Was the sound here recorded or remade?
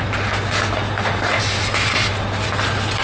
remade